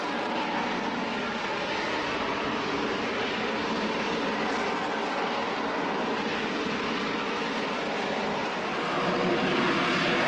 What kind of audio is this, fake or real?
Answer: real